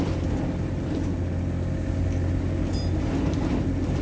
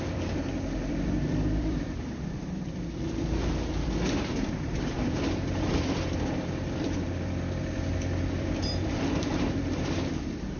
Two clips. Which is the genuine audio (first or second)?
first